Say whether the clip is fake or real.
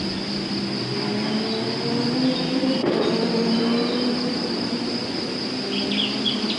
real